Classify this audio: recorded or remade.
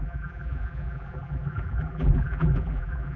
remade